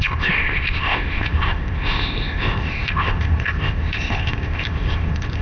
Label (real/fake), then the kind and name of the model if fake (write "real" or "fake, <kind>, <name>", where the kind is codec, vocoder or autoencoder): fake, codec, ZipCodec